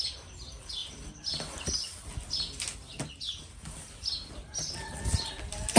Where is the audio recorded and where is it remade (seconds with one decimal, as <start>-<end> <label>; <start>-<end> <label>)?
0.0-5.8 recorded